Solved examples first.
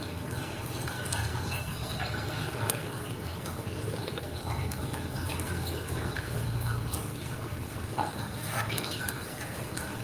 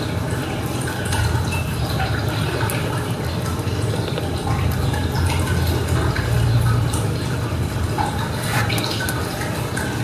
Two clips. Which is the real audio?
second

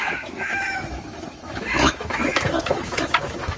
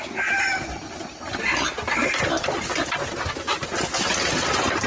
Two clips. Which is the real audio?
second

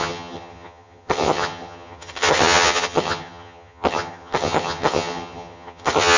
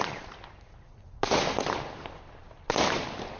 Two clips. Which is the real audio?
second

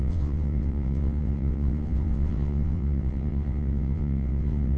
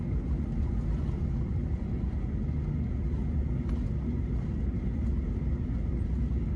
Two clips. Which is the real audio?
second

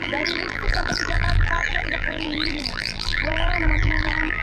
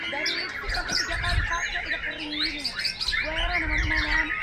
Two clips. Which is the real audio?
second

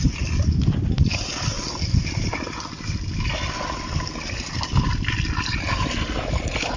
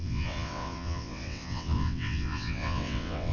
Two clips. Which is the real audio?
first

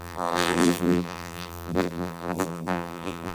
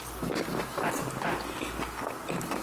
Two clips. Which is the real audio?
second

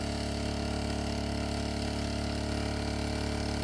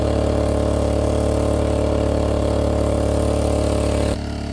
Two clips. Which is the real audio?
first